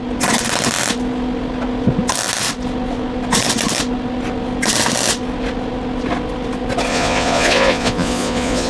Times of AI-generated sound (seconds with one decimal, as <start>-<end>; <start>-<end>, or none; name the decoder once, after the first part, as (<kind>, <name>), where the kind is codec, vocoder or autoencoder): 6.9-8.7 (vocoder, Vocos)